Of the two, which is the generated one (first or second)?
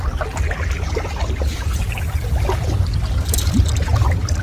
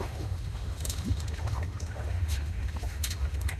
second